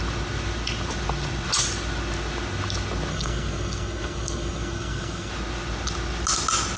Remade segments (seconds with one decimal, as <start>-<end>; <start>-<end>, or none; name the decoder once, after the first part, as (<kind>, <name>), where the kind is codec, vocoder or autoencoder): 3.1-5.3 (codec, SNAC)